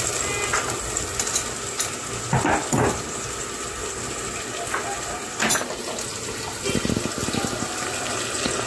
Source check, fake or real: real